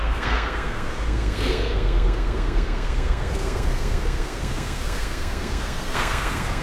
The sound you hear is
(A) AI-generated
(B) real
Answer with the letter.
A